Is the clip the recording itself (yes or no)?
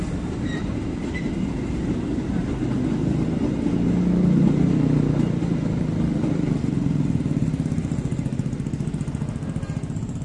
yes